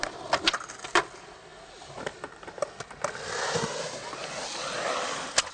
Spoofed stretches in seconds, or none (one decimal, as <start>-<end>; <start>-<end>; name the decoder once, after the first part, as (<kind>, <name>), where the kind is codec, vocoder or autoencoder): none